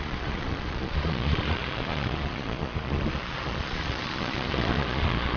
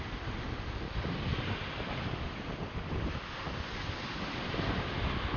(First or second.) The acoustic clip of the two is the second